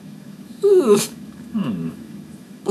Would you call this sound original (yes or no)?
no